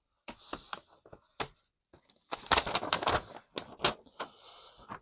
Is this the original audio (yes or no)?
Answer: yes